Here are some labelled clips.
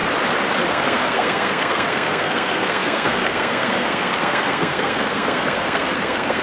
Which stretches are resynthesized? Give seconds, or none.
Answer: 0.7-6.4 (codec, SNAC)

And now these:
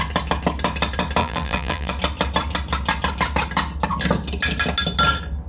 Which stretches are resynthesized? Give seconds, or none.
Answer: 1.2-1.9 (vocoder, BigVGAN v2)

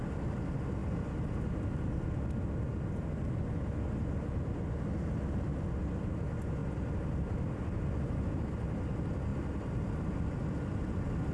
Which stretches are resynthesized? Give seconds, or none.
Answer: 6.6-8.5 (vocoder, BigVGAN v2); 9.3-11.3

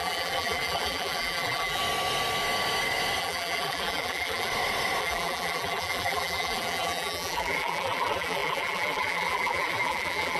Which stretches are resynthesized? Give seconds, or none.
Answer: 0.0-1.8 (vocoder, BigVGAN v2); 3.2-4.5; 5.0-10.4